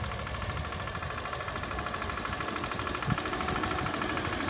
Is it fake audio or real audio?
real